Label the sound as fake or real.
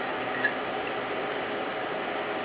real